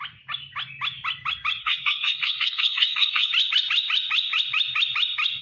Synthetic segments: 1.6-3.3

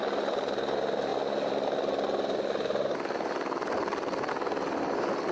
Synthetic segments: none

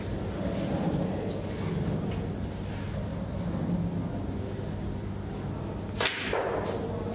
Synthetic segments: none

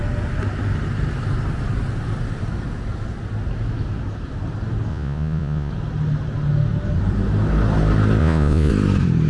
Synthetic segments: 4.9-5.7; 8.2-8.7

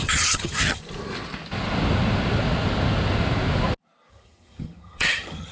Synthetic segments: 0.0-0.8; 4.1-5.5

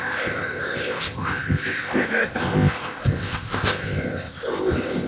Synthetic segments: 0.0-5.1

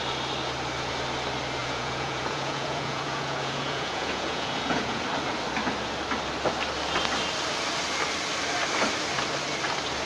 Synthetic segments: 1.6-5.0